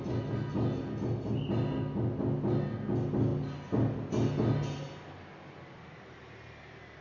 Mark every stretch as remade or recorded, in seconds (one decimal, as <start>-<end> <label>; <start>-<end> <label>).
0.0-7.0 recorded